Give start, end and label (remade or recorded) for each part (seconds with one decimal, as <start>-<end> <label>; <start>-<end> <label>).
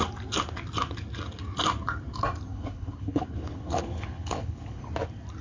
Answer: 0.0-2.5 recorded; 2.5-4.8 remade; 4.8-5.4 recorded